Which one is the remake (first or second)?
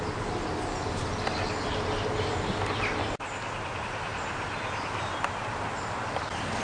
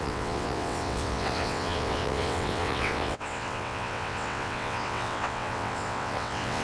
second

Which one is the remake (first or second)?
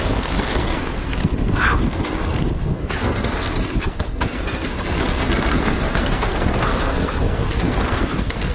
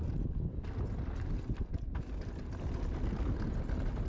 first